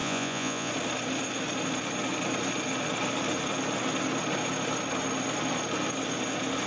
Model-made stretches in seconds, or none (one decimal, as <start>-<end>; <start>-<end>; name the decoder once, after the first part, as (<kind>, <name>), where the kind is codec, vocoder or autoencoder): 0.0-0.7 (vocoder, Vocos)